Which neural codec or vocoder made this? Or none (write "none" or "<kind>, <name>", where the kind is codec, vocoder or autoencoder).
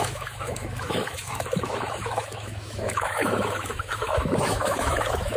autoencoder, DAC-VAE